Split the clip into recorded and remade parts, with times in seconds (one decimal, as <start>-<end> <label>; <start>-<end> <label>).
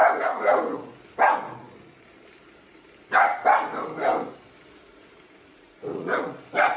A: 0.0-4.9 recorded; 4.9-6.2 remade; 6.2-6.8 recorded